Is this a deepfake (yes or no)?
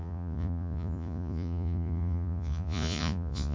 yes